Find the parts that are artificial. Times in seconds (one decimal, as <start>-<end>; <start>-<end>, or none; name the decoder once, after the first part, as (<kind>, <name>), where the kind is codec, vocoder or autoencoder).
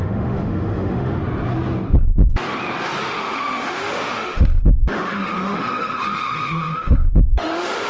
0.0-1.2 (autoencoder, DAC-VAE); 3.0-7.9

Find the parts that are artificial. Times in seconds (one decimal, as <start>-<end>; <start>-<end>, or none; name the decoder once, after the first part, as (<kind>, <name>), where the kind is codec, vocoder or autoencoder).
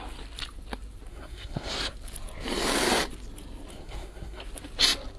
1.1-1.7 (codec, SNAC); 3.7-4.4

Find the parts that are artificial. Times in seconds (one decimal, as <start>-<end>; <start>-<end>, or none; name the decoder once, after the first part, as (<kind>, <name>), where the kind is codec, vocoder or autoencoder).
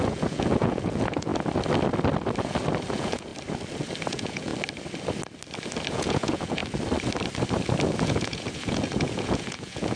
0.0-1.3 (vocoder, Vocos); 2.9-3.3; 4.1-4.5; 5.9-6.6; 8.0-10.0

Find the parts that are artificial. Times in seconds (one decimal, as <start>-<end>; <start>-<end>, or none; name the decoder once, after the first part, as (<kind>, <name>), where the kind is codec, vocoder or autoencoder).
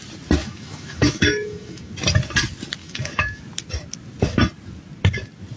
0.4-1.9 (autoencoder, DAC-VAE); 2.8-3.4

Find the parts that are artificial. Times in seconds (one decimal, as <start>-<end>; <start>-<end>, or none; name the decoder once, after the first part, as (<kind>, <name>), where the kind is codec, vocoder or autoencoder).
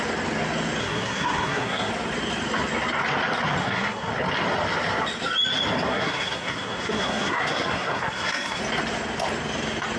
0.8-1.9 (codec, SNAC); 3.6-4.1; 5.9-8.6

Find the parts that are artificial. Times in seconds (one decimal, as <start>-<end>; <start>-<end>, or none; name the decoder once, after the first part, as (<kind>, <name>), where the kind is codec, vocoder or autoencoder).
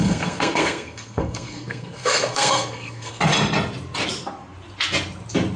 0.0-3.2 (codec, SNAC)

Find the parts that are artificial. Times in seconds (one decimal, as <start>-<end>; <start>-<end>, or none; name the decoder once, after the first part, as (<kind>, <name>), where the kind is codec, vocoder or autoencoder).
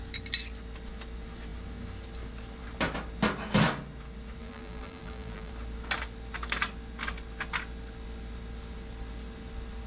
4.4-5.5 (vocoder, BigVGAN v2)